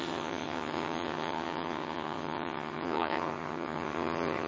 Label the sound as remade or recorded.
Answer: remade